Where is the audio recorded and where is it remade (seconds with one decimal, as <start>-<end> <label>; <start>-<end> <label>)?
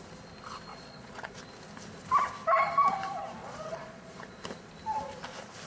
0.0-0.7 recorded; 0.7-1.4 remade; 1.4-3.4 recorded; 3.4-4.4 remade; 4.4-5.7 recorded